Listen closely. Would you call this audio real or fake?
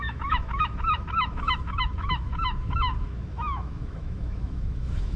fake